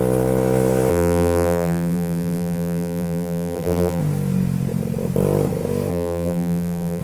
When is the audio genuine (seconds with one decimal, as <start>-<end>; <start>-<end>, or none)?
0.0-0.9; 4.0-5.9